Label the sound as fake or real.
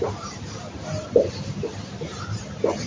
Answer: fake